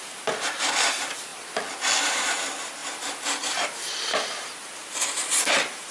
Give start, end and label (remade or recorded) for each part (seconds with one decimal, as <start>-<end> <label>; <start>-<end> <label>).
0.0-1.3 remade; 1.3-2.0 recorded; 2.0-5.9 remade

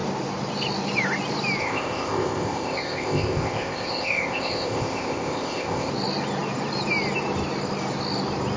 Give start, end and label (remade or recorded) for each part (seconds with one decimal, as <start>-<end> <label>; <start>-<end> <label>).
0.0-1.6 recorded; 1.6-5.9 remade; 5.9-8.6 recorded

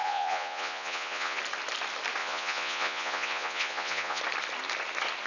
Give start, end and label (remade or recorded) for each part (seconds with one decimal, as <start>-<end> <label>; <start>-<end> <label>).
0.0-1.4 remade; 1.4-2.2 recorded; 2.2-4.2 remade; 4.2-5.3 recorded

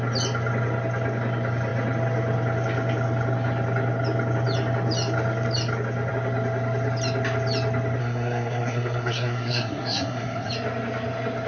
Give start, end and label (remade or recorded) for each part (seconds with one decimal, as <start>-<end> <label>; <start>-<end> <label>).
0.0-8.0 recorded; 8.0-10.5 remade; 10.5-11.5 recorded

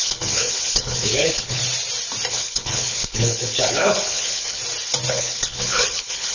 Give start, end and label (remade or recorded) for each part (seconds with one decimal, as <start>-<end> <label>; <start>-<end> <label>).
0.0-1.6 remade; 1.6-2.3 recorded; 2.3-4.6 remade; 4.6-5.1 recorded; 5.1-6.3 remade

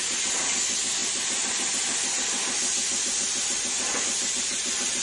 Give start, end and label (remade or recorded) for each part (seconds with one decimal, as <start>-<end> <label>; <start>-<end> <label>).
0.0-5.0 recorded

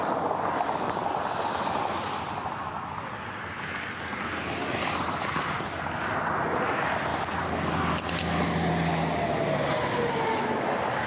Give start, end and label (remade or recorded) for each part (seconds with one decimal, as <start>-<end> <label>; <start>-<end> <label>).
0.0-11.1 recorded

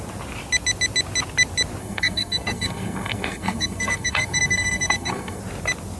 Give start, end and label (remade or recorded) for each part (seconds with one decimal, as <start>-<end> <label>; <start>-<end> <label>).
0.0-1.8 recorded; 1.8-5.4 remade; 5.4-6.0 recorded